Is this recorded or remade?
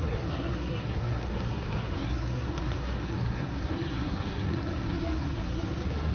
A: remade